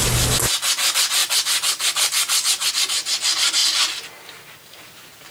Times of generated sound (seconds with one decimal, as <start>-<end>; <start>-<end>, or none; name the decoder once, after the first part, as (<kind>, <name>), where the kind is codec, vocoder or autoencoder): 1.2-2.7 (vocoder, BigVGAN v2)